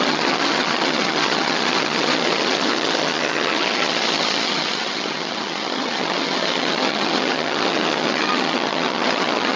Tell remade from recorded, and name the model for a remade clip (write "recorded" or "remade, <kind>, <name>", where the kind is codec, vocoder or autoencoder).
remade, vocoder, HiFi-GAN